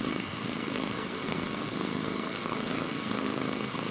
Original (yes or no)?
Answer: no